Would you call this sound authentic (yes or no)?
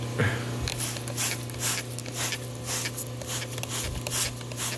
yes